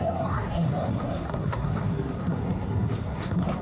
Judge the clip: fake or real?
fake